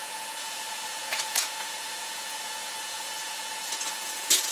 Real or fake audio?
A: fake